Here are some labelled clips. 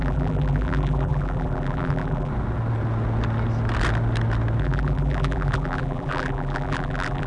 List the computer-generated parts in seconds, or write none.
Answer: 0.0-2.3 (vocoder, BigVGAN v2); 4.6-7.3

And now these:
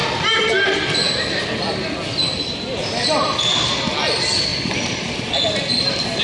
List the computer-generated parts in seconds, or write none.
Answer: none

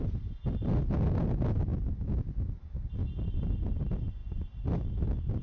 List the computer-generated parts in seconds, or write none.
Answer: none

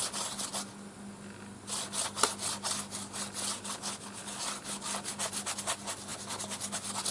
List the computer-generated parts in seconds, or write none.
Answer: none

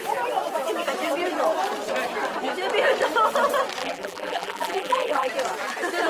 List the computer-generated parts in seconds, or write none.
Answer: 3.8-5.3 (vocoder, BigVGAN v2)

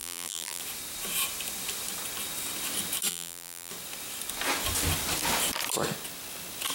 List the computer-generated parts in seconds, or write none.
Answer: 0.0-0.6 (vocoder, BigVGAN v2); 3.1-3.7